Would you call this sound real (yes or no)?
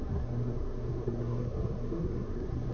no